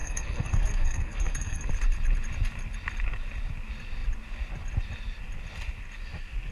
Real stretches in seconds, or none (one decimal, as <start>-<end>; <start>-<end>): 1.7-6.5